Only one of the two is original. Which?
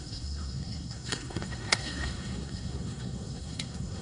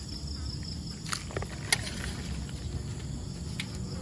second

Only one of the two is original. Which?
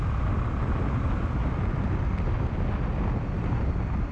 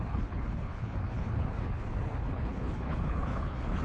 first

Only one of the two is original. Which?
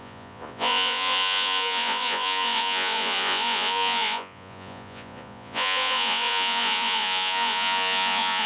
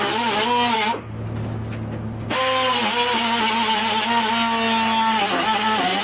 second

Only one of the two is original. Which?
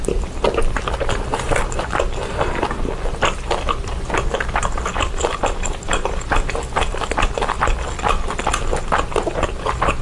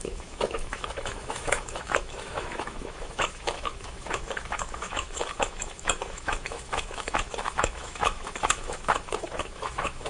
first